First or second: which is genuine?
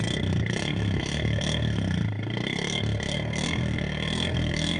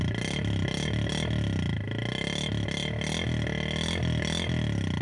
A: second